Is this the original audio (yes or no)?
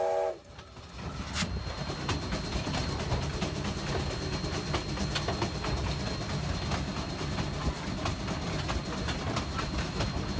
yes